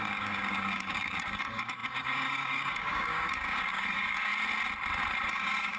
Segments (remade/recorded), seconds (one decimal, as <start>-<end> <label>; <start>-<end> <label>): 0.0-4.3 remade; 4.3-5.3 recorded; 5.3-5.8 remade